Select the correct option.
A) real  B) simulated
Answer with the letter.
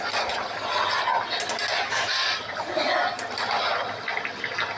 A